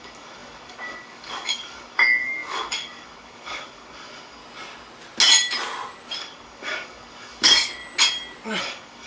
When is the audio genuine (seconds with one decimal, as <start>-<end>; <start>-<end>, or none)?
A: 4.4-6.2; 7.8-8.6